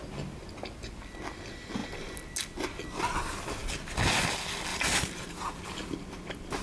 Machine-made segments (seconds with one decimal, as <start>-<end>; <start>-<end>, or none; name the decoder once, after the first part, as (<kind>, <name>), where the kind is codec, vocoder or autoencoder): 4.7-5.6 (vocoder, BigVGAN v2)